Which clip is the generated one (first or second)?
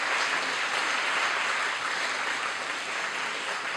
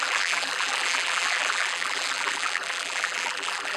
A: second